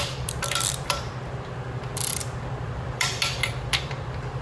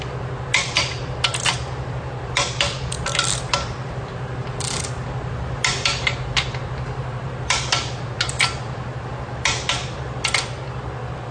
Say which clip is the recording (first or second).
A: second